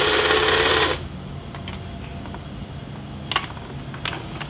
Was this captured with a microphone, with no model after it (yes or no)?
yes